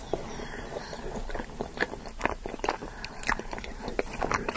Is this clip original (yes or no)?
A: no